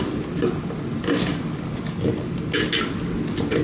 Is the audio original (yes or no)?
yes